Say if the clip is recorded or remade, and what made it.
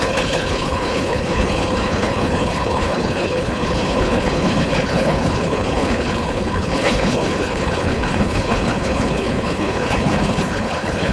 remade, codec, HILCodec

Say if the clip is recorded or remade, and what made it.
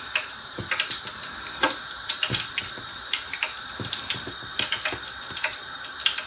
remade, vocoder, BigVGAN v2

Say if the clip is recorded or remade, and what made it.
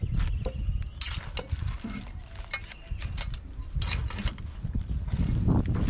recorded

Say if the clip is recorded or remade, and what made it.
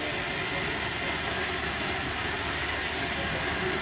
recorded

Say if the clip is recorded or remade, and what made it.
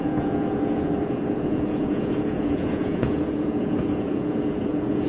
remade, vocoder, Vocos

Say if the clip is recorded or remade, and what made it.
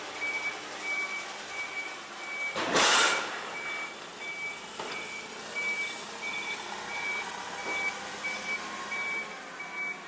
recorded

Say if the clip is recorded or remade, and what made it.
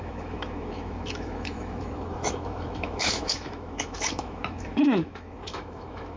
remade, autoencoder, DAC-VAE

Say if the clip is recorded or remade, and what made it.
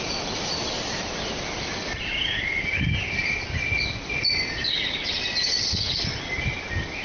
recorded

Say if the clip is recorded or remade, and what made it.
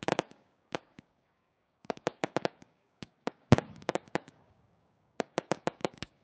remade, codec, DAC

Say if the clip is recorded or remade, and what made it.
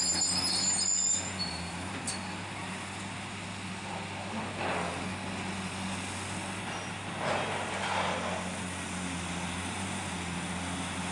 recorded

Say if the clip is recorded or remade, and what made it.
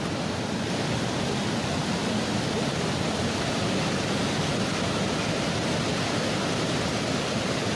recorded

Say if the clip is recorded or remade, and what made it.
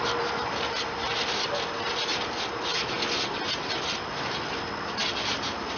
recorded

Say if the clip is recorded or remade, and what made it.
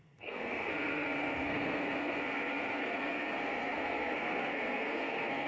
remade, codec, SNAC